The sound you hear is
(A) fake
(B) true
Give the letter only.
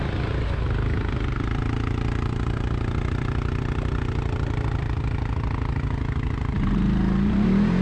B